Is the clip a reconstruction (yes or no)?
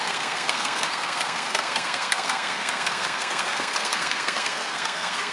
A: yes